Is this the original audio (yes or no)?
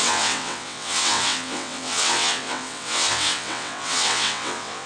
no